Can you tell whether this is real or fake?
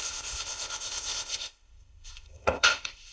fake